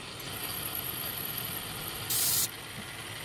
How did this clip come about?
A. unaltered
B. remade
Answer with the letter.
A